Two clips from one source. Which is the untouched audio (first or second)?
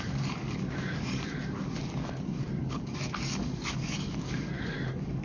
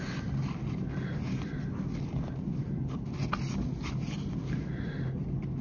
second